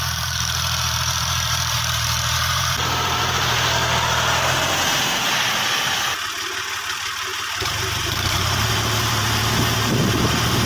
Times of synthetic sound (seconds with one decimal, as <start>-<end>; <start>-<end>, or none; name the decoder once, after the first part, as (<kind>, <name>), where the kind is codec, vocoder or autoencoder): 0.0-3.8 (vocoder, BigVGAN v2); 4.7-10.7